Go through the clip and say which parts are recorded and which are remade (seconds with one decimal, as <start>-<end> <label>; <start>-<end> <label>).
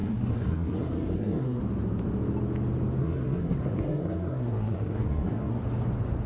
0.0-1.6 remade; 1.6-3.0 recorded; 3.0-5.6 remade; 5.6-6.3 recorded